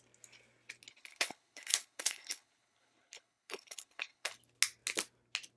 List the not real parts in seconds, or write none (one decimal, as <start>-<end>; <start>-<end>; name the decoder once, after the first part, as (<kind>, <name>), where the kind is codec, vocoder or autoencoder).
0.9-4.3 (codec, HILCodec)